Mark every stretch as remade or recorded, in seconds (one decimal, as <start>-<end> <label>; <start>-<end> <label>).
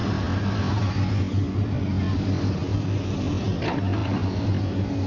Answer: 0.0-2.7 recorded; 2.7-3.3 remade; 3.3-5.1 recorded